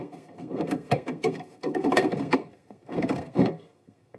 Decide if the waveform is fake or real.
fake